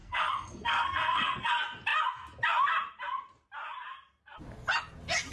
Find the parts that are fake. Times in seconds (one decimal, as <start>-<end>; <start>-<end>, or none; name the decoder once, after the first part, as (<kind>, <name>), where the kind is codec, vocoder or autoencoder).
0.0-1.5 (codec, SNAC)